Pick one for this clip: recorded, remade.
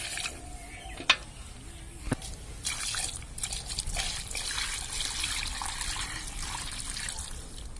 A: recorded